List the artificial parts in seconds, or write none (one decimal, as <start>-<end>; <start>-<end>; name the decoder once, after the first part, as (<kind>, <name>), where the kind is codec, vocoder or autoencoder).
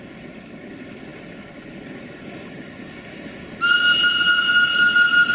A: none